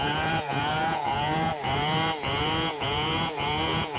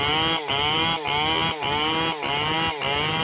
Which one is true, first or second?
second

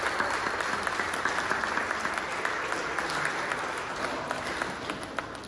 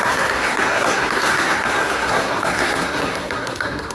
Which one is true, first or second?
first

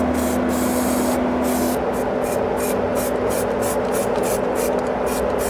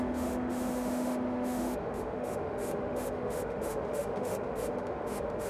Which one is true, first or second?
first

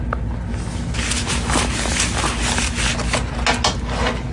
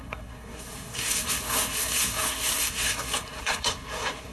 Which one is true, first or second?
first